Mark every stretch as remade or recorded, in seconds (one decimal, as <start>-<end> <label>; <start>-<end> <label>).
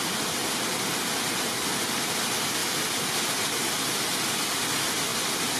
0.0-5.6 recorded